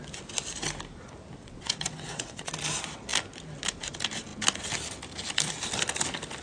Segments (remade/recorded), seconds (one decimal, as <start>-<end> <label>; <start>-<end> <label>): 0.0-1.4 recorded; 1.4-2.5 remade; 2.5-6.4 recorded